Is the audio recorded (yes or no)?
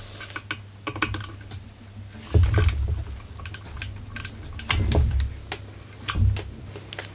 yes